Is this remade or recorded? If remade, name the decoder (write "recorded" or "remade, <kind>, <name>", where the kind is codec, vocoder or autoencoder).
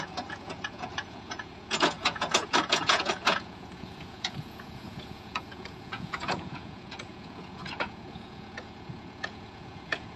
remade, vocoder, Vocos